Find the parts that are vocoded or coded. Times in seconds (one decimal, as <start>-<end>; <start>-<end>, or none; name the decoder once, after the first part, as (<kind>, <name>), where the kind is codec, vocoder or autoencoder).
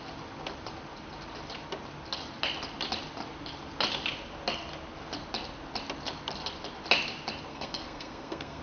7.5-8.6 (codec, SNAC)